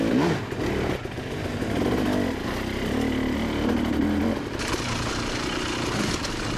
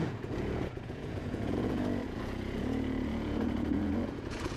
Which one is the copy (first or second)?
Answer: second